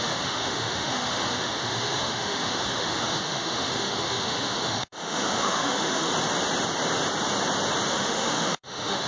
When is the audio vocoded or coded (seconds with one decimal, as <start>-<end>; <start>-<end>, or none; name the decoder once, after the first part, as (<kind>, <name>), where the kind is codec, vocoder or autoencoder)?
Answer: 0.0-6.1 (autoencoder, DAC-VAE); 7.9-9.1